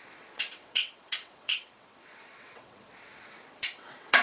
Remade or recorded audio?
remade